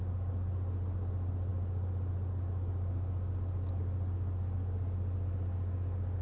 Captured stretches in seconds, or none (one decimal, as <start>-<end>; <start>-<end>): 0.0-6.2